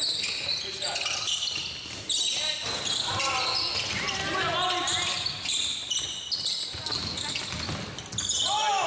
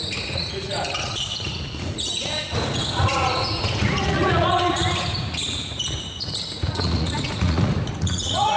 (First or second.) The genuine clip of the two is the first